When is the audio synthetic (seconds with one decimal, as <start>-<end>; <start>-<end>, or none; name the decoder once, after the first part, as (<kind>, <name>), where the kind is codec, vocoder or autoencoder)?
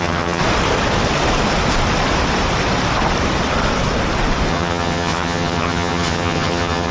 0.0-0.4 (vocoder, HiFi-GAN); 4.5-6.9